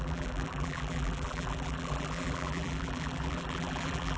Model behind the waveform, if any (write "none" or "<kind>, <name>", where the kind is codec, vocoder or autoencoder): vocoder, BigVGAN v2